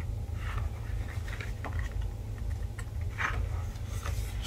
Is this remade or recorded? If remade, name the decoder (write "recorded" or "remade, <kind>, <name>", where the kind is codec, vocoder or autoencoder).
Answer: recorded